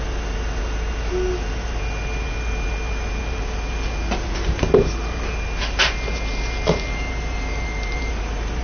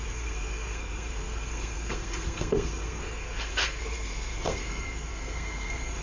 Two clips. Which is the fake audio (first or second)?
second